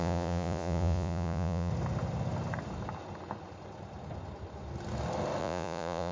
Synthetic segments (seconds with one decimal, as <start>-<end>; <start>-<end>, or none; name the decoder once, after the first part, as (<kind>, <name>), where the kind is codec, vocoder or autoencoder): 0.0-1.7 (vocoder, Vocos); 5.4-6.1